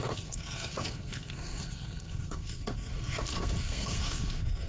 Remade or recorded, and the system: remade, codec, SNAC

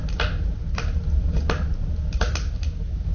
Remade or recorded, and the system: recorded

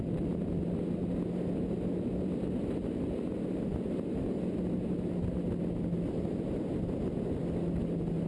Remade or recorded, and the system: recorded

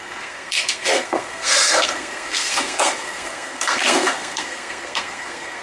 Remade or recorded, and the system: remade, codec, SNAC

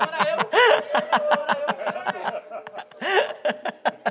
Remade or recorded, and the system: recorded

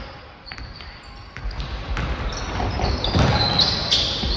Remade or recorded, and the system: recorded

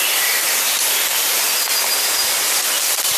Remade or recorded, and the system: recorded